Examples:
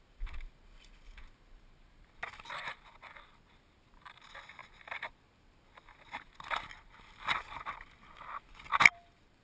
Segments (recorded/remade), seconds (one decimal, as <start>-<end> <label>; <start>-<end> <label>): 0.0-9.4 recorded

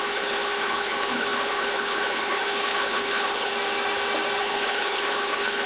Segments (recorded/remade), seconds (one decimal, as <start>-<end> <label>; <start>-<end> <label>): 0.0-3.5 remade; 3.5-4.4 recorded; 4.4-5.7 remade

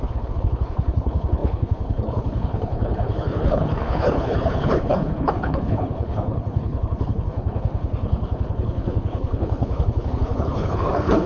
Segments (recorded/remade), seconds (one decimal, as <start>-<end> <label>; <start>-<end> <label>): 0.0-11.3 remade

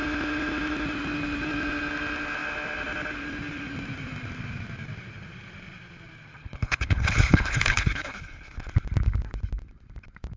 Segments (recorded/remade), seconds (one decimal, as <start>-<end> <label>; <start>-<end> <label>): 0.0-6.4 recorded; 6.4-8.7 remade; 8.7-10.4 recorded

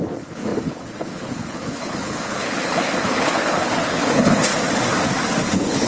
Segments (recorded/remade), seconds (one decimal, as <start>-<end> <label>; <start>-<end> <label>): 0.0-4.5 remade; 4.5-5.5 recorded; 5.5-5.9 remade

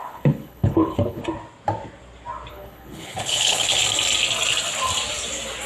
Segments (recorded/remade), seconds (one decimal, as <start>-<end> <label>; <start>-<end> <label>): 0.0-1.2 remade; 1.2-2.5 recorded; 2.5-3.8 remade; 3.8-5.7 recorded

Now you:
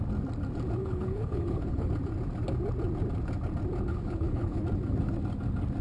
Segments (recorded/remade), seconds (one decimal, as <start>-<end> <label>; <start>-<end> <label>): 0.0-0.8 recorded; 0.8-1.9 remade; 1.9-3.9 recorded; 3.9-4.6 remade; 4.6-5.8 recorded

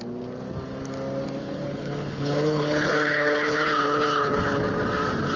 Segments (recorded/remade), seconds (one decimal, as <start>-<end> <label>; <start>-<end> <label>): 0.0-1.4 recorded; 1.4-4.6 remade; 4.6-5.4 recorded